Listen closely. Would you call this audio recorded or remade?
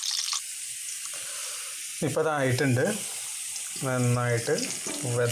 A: recorded